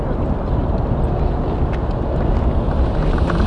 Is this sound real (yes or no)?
yes